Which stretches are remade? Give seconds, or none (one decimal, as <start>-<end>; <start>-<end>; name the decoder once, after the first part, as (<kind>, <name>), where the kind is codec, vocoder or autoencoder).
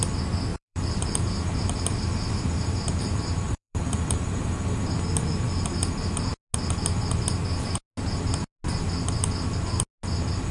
0.5-4.5 (vocoder, BigVGAN v2)